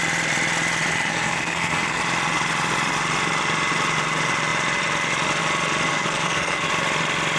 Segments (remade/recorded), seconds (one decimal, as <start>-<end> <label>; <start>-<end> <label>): 0.0-1.1 recorded; 1.1-2.0 remade; 2.0-5.9 recorded; 5.9-6.7 remade; 6.7-7.4 recorded